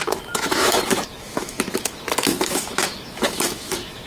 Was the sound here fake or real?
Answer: fake